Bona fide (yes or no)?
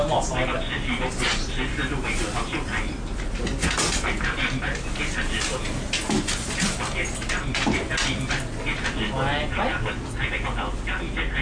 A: yes